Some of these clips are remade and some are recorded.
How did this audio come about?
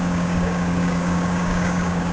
remade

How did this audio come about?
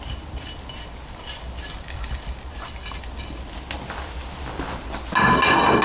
recorded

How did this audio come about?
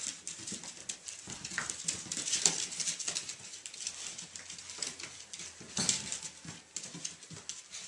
recorded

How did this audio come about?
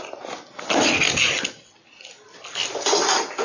recorded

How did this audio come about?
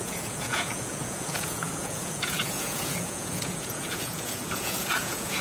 remade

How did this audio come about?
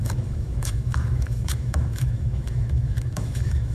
remade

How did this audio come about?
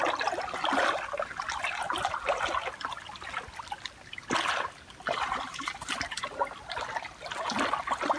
recorded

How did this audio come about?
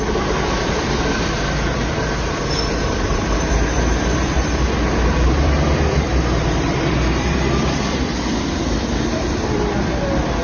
remade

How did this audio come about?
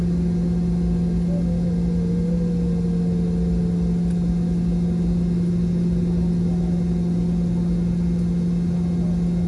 recorded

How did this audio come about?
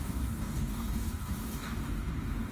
remade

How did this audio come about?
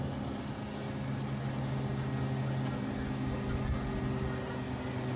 recorded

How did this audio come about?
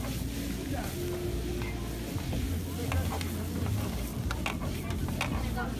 recorded